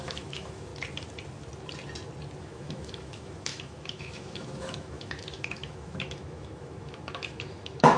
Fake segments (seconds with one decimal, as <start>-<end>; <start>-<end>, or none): 0.0-0.7; 2.4-8.0